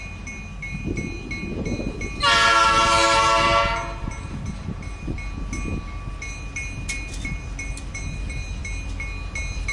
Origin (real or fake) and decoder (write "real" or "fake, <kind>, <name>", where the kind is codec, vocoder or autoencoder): real